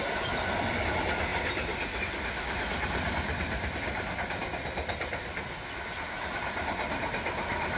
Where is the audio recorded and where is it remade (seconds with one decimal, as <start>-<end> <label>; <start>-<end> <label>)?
0.0-7.8 recorded